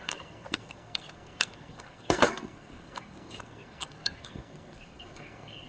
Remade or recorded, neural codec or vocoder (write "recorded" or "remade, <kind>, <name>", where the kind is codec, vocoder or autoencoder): remade, codec, SNAC